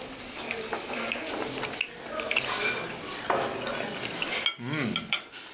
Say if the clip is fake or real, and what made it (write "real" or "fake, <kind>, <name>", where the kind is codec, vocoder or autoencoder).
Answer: real